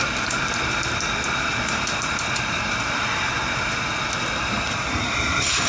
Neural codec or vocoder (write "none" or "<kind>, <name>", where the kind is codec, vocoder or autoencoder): vocoder, BigVGAN v2